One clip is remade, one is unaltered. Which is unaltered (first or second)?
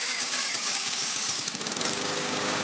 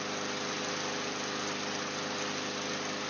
second